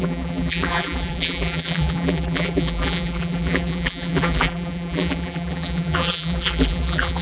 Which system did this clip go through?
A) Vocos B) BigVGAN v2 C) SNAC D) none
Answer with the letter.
B